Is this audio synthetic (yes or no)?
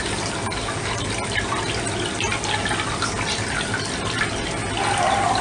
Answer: no